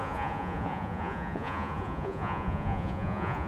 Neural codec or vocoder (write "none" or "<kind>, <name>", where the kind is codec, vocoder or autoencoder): vocoder, Vocos